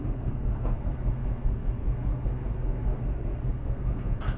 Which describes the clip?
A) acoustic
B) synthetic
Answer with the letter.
B